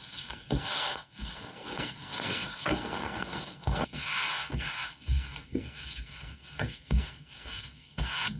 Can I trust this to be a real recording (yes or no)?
no